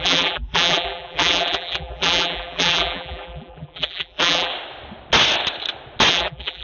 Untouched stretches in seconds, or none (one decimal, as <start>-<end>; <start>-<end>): 4.5-6.1